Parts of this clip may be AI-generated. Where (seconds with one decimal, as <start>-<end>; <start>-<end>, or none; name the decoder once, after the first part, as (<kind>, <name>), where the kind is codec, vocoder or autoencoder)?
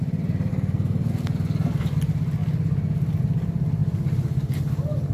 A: 0.5-1.1 (codec, SNAC)